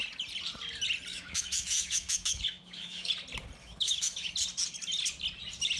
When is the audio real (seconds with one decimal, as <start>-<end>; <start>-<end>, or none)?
0.0-1.1; 3.1-3.6; 4.3-5.8